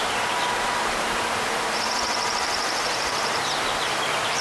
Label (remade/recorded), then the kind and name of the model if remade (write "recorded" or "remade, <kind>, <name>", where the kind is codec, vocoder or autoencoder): remade, vocoder, BigVGAN v2